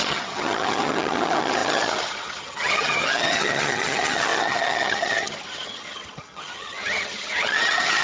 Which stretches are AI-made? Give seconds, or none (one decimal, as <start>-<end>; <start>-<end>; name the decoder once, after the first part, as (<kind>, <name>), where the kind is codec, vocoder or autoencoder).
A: 0.0-8.0 (vocoder, HiFi-GAN)